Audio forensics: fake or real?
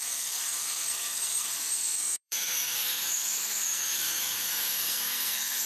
fake